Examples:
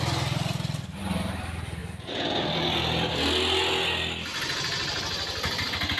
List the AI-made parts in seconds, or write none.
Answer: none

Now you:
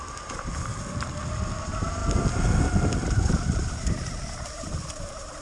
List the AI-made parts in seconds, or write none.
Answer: 0.0-0.7 (vocoder, BigVGAN v2); 1.6-2.0; 3.5-5.4

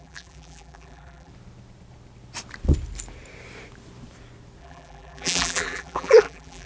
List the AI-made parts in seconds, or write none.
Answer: 0.0-1.3 (vocoder, BigVGAN v2); 4.6-6.7

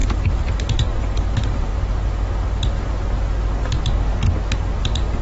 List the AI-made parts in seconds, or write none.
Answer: 0.0-1.7 (vocoder, BigVGAN v2); 4.8-5.2